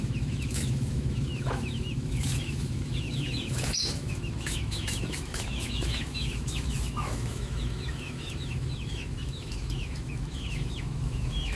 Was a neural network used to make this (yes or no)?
yes